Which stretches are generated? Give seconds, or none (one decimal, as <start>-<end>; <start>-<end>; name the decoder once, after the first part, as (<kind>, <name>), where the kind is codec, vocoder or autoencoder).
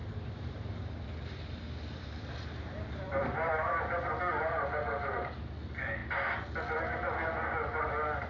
0.0-4.2 (vocoder, BigVGAN v2)